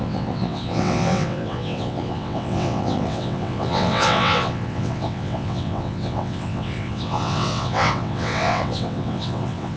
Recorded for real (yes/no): no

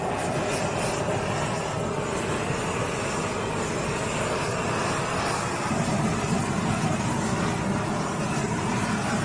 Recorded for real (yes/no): yes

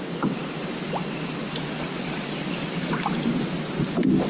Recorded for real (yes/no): yes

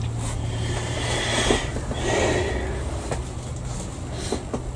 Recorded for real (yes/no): yes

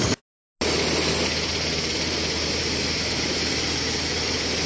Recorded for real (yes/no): yes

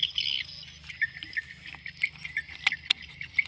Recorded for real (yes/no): yes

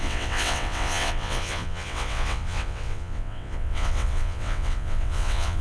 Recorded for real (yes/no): no